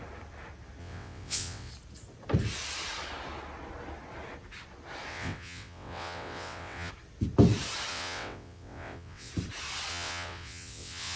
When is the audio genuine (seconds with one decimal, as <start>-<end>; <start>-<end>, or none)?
0.0-0.8; 1.7-5.1; 6.9-7.9; 9.3-9.9